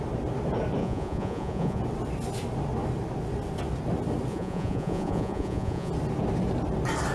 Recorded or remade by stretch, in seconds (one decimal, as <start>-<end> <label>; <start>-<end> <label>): 0.0-0.8 recorded; 0.8-1.8 remade; 1.8-4.3 recorded; 4.3-5.9 remade; 5.9-7.1 recorded